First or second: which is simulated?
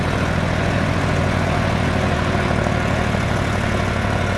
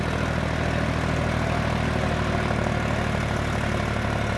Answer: first